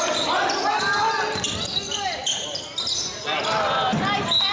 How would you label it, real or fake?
real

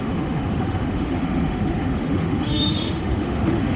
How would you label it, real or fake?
fake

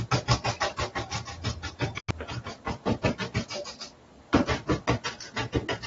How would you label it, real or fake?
real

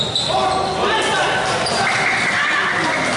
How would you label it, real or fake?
real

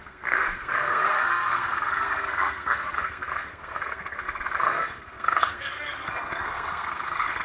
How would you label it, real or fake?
fake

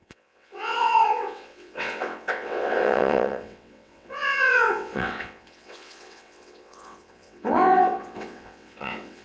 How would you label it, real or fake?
fake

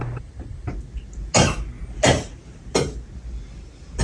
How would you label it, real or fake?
real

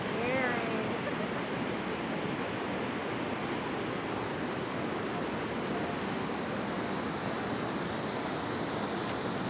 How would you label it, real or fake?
real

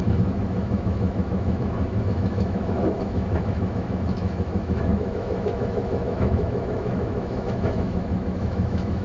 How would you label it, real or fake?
fake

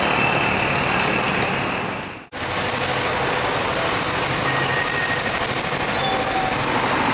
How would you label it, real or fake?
real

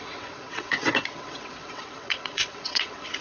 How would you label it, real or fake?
fake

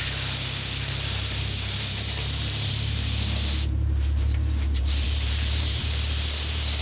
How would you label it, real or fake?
fake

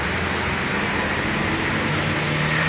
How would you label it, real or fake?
real